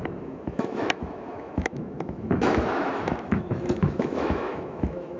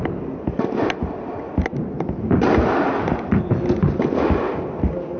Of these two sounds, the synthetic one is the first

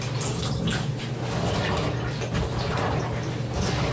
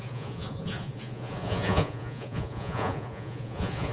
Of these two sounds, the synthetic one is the second